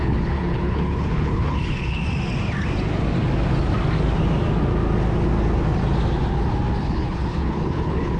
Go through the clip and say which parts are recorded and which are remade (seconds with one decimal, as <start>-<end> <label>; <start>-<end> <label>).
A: 0.0-2.0 remade; 2.0-6.8 recorded; 6.8-8.2 remade